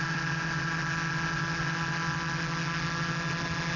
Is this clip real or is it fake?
real